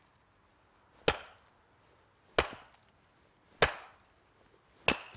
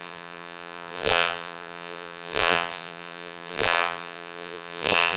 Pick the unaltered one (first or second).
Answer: first